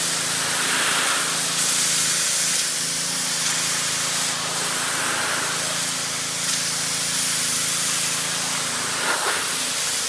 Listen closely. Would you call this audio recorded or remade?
recorded